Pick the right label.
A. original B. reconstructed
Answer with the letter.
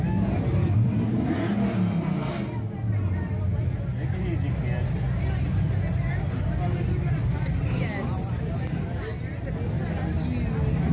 A